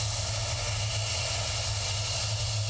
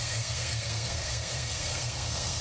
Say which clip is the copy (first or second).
second